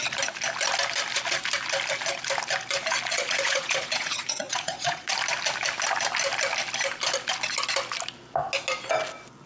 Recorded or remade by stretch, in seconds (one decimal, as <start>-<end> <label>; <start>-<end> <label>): 0.0-3.1 recorded; 3.1-5.1 remade; 5.1-9.5 recorded